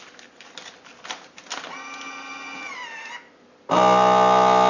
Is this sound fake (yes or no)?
no